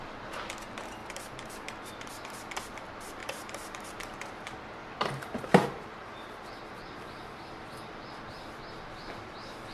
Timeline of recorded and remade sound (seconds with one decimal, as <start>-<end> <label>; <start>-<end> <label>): 0.0-3.2 recorded; 3.2-8.2 remade; 8.2-9.7 recorded